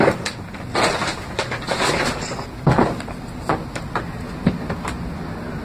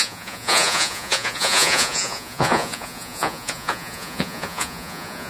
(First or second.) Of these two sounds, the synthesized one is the second